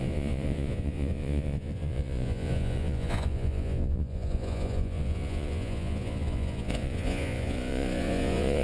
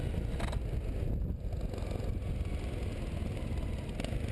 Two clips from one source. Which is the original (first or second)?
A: second